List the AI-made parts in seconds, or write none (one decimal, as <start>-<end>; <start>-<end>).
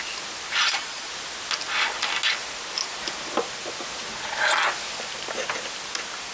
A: 0.6-1.1